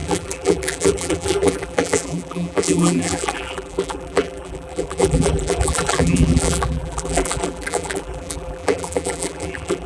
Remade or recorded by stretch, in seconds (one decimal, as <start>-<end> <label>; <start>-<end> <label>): 0.0-9.9 remade

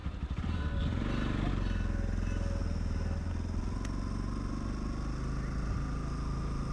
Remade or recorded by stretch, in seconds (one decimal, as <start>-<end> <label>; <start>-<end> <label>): 0.0-1.5 remade; 1.5-2.6 recorded; 2.6-3.3 remade; 3.3-6.7 recorded

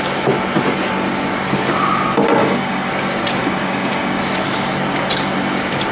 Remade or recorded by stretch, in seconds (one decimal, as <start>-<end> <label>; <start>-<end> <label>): 0.0-2.4 recorded; 2.4-2.9 remade; 2.9-3.4 recorded; 3.4-4.2 remade; 4.2-5.9 recorded

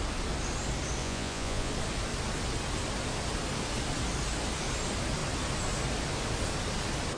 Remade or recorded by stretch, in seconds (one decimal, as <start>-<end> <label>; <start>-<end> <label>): 0.0-1.0 recorded; 1.0-1.7 remade; 1.7-7.2 recorded

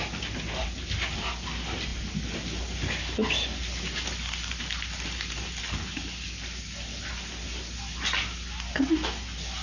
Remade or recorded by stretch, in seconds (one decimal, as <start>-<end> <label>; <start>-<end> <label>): 0.0-9.6 recorded

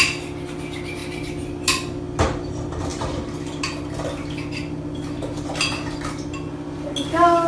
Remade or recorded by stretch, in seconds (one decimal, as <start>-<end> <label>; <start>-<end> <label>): 0.0-7.5 recorded

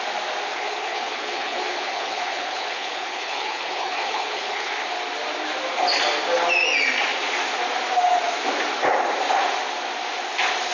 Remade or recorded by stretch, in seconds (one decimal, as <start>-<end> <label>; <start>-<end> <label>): 0.0-0.5 recorded; 0.5-4.7 remade; 4.7-10.7 recorded

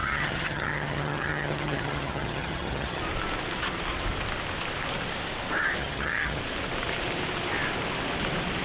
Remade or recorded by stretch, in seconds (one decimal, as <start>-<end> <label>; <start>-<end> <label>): 0.0-3.0 remade; 3.0-5.8 recorded; 5.8-6.4 remade; 6.4-8.6 recorded